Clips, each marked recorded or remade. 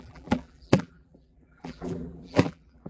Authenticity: remade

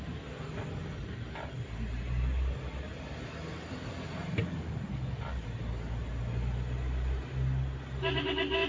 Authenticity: recorded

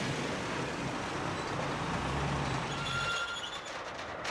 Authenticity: recorded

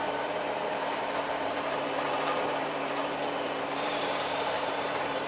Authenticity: remade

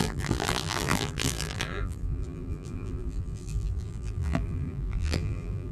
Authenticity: remade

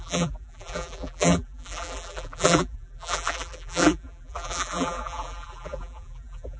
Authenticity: remade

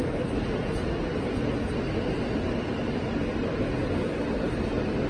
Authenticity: recorded